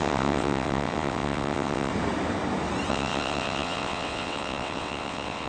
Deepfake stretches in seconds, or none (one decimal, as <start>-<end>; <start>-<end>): 0.0-1.9; 2.9-5.5